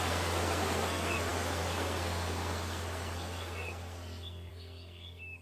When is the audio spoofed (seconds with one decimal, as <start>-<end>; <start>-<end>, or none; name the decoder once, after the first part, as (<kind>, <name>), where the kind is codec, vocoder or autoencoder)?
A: 0.0-5.4 (codec, SNAC)